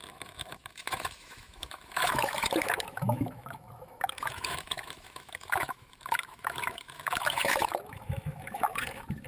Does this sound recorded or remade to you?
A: remade